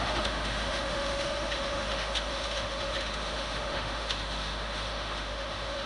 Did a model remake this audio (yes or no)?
yes